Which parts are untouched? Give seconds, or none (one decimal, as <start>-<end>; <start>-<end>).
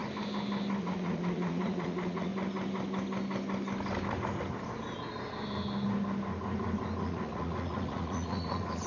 0.0-0.8; 2.3-7.0